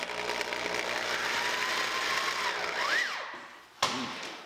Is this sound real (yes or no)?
yes